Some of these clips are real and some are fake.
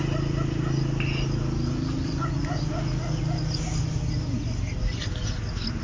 real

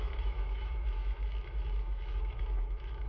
fake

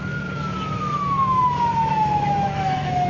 fake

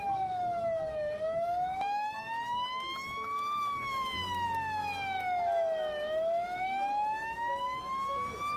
fake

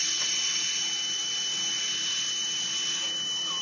real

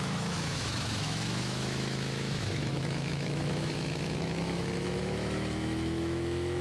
fake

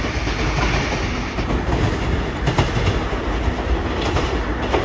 real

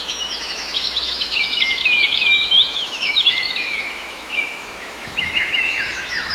fake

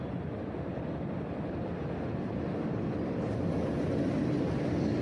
real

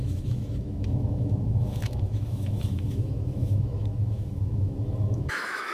fake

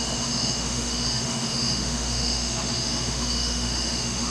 fake